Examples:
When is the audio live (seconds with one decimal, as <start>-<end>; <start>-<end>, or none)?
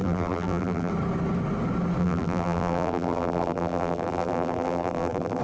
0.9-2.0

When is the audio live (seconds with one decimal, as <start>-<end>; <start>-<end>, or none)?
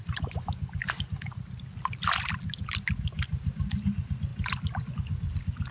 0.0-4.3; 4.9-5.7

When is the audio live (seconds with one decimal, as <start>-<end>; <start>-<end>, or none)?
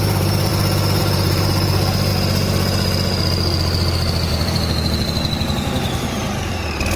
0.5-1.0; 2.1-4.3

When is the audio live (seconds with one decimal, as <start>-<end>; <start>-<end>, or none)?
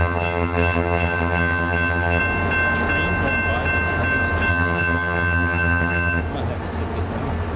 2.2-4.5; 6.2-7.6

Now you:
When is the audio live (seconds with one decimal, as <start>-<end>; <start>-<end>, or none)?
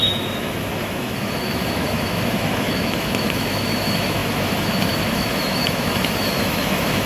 none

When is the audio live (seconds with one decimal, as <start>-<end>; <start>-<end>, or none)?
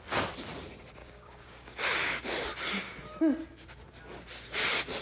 0.0-1.0; 2.4-5.0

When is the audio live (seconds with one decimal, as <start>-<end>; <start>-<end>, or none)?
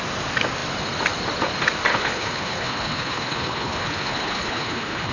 0.0-1.9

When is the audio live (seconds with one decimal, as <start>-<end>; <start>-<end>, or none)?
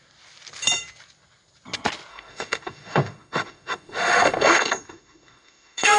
0.0-2.1